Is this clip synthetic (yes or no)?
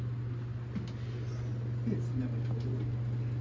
no